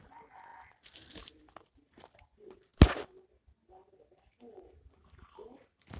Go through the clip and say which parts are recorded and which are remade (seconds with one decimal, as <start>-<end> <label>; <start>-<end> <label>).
0.0-6.0 recorded